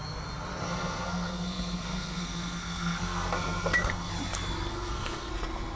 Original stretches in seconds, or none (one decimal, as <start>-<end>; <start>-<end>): 0.0-0.6; 4.1-4.7; 5.3-5.8